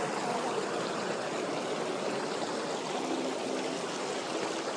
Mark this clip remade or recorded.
recorded